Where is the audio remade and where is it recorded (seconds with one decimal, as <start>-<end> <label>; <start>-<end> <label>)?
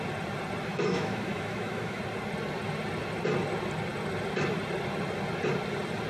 0.0-0.7 recorded; 0.7-2.0 remade; 2.0-6.1 recorded